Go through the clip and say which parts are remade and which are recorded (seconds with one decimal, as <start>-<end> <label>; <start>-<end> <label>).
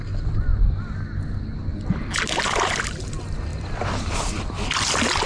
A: 0.0-5.3 recorded